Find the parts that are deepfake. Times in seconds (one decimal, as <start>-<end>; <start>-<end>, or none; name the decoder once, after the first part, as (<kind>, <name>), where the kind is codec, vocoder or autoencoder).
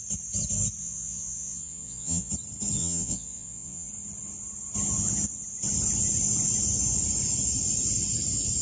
0.8-2.3 (vocoder, Vocos); 2.8-3.9